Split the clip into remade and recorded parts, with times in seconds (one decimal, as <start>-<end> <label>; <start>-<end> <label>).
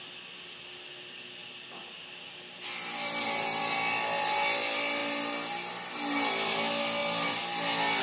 0.0-8.0 recorded